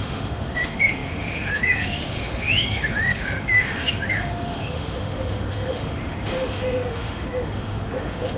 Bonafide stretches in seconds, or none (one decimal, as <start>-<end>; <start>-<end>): none